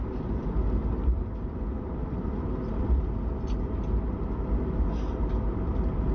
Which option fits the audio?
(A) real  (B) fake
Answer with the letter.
A